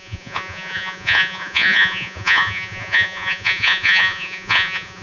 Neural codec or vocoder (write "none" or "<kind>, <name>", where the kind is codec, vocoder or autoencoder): vocoder, Vocos